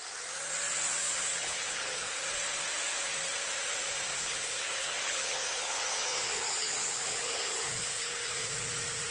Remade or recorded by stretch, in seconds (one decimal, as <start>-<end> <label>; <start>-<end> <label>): 0.0-1.0 recorded; 1.0-2.1 remade; 2.1-4.1 recorded; 4.1-8.5 remade; 8.5-9.1 recorded

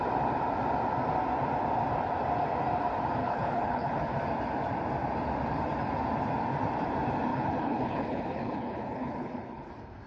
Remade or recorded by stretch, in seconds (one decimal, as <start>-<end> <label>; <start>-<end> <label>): 0.0-3.2 recorded; 3.2-4.1 remade; 4.1-7.3 recorded; 7.3-9.7 remade; 9.7-10.1 recorded

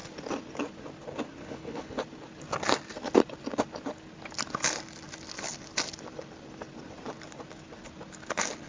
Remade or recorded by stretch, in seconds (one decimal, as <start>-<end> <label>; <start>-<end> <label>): 0.0-1.4 recorded; 1.4-2.0 remade; 2.0-8.7 recorded

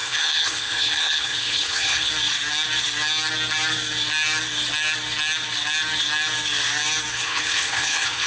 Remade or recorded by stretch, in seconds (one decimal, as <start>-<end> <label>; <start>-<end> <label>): 0.0-2.1 remade; 2.1-7.1 recorded; 7.1-8.3 remade

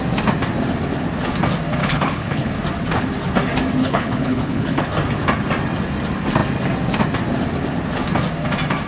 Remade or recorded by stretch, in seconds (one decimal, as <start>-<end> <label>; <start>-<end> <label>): 0.0-1.8 recorded; 1.8-2.5 remade; 2.5-3.8 recorded; 3.8-4.9 remade; 4.9-8.9 recorded

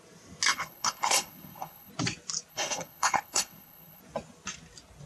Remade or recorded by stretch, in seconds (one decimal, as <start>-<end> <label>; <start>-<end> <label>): 0.0-0.5 recorded; 0.5-1.9 remade; 1.9-2.5 recorded; 2.5-4.0 remade; 4.0-5.1 recorded

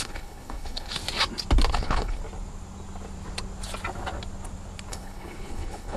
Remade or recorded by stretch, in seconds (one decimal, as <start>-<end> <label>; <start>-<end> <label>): 0.0-1.0 remade; 1.0-1.7 recorded; 1.7-2.2 remade; 2.2-4.9 recorded; 4.9-6.0 remade

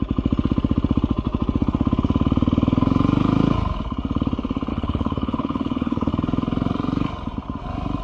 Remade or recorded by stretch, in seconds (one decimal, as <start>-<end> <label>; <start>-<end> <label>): 0.0-4.7 recorded; 4.7-6.1 remade; 6.1-8.0 recorded